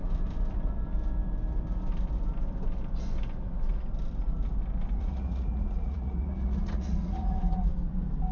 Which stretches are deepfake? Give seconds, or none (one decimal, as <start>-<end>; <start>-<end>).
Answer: 5.0-7.7